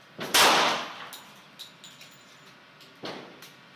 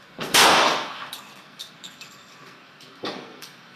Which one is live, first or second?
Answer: first